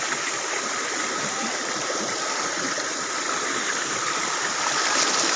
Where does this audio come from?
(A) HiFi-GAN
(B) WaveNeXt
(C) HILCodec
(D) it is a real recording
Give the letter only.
D